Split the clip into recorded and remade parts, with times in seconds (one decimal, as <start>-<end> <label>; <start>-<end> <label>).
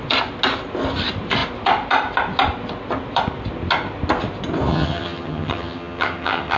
0.0-4.7 recorded; 4.7-6.6 remade